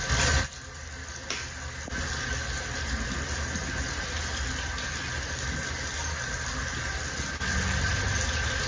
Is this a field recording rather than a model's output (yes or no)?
yes